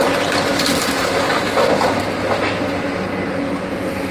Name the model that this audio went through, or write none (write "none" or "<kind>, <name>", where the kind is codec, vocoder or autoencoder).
none